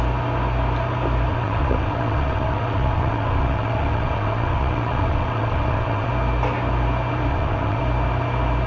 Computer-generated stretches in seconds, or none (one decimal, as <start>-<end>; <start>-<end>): 1.3-6.1; 7.3-7.8